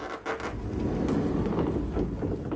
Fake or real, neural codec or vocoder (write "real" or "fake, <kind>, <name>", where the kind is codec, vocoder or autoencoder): real